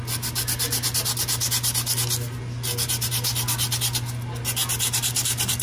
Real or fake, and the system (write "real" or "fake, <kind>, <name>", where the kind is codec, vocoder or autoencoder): real